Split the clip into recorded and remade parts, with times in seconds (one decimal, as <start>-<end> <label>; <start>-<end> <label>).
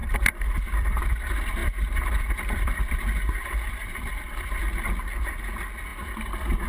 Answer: 0.0-1.0 remade; 1.0-1.6 recorded; 1.6-4.6 remade; 4.6-5.9 recorded; 5.9-6.7 remade